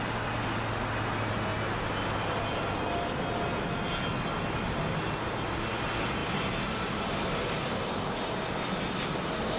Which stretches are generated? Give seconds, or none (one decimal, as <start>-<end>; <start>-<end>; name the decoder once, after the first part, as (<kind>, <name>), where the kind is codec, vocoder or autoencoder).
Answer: none